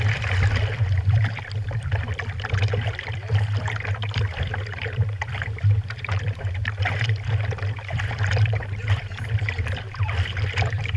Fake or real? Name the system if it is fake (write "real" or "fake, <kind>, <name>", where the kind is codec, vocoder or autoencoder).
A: fake, vocoder, BigVGAN v2